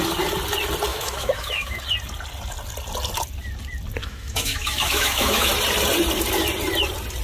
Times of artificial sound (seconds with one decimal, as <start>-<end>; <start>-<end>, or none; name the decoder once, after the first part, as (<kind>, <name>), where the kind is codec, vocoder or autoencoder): 0.9-1.8 (autoencoder, DAC-VAE); 4.0-5.5

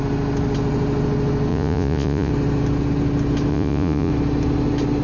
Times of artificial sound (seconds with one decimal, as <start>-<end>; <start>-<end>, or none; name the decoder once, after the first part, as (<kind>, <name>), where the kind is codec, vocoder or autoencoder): 1.5-2.3 (vocoder, Vocos); 3.5-4.1